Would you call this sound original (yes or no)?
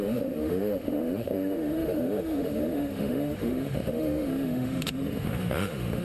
no